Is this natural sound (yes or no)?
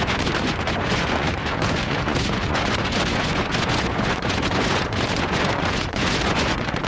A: no